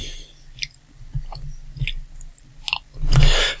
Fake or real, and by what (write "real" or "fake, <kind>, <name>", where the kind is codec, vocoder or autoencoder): real